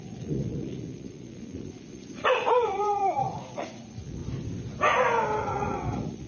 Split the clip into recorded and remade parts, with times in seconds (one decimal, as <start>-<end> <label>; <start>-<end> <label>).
0.0-4.2 remade; 4.2-5.4 recorded; 5.4-6.3 remade